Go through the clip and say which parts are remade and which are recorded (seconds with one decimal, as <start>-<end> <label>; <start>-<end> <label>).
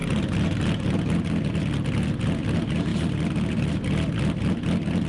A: 0.0-5.1 recorded